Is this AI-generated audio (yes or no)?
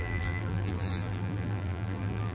yes